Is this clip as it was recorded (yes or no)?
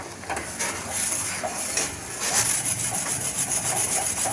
yes